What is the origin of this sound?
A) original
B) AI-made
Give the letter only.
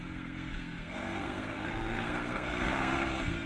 B